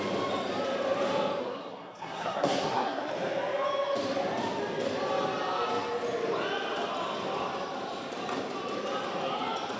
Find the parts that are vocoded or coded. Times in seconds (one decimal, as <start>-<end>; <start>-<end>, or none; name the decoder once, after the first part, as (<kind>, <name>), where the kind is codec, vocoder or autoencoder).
1.4-3.1 (codec, SNAC)